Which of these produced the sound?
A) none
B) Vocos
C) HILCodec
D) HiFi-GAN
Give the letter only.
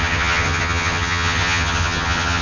D